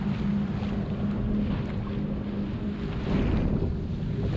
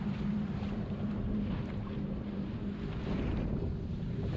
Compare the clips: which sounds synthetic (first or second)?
second